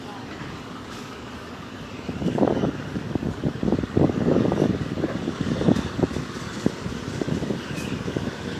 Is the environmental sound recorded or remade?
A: remade